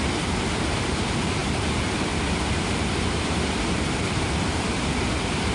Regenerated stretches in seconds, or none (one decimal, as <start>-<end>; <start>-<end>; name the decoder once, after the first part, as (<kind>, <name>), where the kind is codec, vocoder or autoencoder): 1.4-4.7 (vocoder, BigVGAN v2)